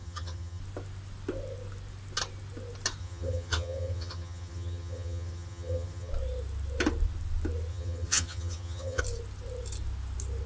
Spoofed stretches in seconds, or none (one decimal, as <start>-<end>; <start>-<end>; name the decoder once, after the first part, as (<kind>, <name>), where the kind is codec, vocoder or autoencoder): 0.0-0.6 (vocoder, HiFi-GAN); 3.0-6.1; 7.7-9.0